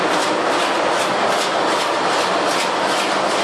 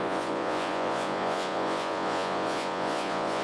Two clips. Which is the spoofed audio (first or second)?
second